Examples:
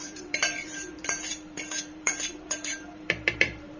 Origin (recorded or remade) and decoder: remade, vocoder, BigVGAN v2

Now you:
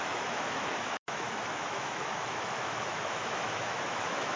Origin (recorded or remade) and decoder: remade, autoencoder, DAC-VAE